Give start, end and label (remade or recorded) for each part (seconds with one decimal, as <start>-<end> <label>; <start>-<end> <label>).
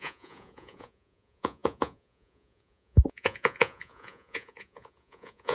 0.0-5.5 remade